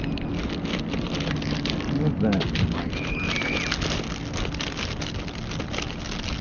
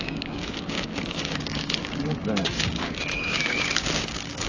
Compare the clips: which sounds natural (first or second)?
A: first